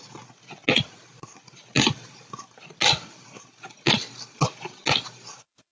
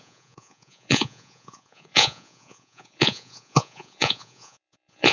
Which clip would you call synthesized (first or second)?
second